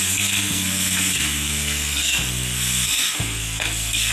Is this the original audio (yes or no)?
no